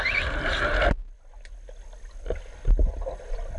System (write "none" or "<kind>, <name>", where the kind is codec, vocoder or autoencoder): none